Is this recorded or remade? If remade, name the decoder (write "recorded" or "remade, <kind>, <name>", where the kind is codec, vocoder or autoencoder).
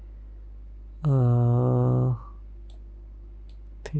recorded